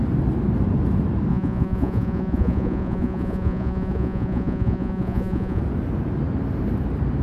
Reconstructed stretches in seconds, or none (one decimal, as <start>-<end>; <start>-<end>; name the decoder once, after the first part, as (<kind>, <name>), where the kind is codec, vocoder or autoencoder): 1.3-5.6 (vocoder, Vocos)